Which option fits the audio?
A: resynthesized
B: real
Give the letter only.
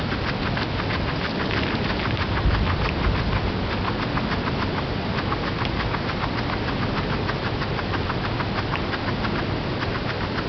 B